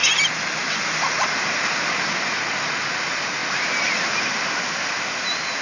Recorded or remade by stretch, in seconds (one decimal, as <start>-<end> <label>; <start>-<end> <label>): 0.0-5.6 recorded